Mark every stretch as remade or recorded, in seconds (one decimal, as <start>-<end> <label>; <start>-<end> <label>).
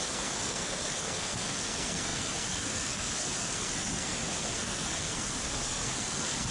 0.0-6.5 remade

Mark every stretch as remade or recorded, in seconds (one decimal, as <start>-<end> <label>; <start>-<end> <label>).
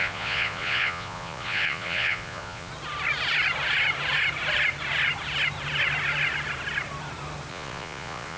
0.0-2.7 remade; 2.7-7.5 recorded; 7.5-8.4 remade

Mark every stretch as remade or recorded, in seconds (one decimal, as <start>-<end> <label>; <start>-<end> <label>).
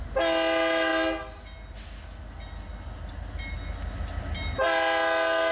0.0-5.5 recorded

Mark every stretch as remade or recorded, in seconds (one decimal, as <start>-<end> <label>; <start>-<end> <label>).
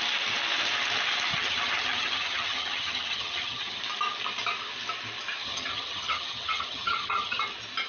0.0-1.3 recorded; 1.3-3.8 remade; 3.8-5.4 recorded; 5.4-7.4 remade; 7.4-7.9 recorded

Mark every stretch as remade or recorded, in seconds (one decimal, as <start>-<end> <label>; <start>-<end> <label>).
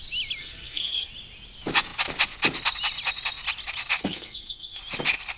0.0-0.4 recorded; 0.4-1.1 remade; 1.1-4.0 recorded; 4.0-4.8 remade; 4.8-5.4 recorded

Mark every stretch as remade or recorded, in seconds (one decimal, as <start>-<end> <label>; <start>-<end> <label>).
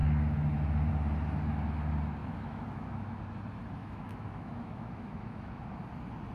0.0-2.2 recorded; 2.2-3.2 remade; 3.2-3.8 recorded; 3.8-5.6 remade; 5.6-6.3 recorded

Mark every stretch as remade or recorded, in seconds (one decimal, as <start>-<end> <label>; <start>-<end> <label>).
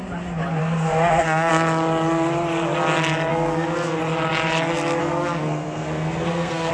0.0-0.6 recorded; 0.6-1.5 remade; 1.5-3.3 recorded; 3.3-4.0 remade; 4.0-5.0 recorded; 5.0-6.7 remade